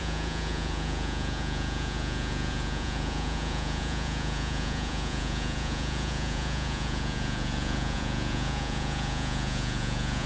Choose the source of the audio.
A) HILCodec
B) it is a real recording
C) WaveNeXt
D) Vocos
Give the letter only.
D